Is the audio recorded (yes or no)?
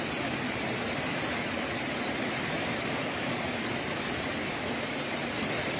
yes